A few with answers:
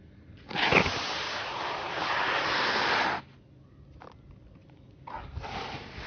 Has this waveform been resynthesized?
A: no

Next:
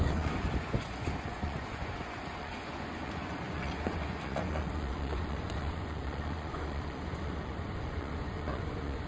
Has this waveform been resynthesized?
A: yes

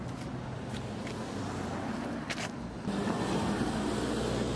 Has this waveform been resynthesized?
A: no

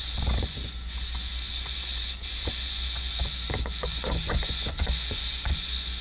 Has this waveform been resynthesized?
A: yes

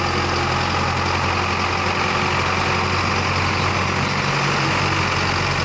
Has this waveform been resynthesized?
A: no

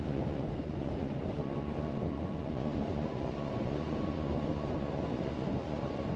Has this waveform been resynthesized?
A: yes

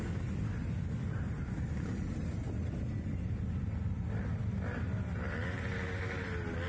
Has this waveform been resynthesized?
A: no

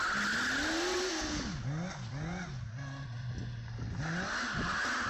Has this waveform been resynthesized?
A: no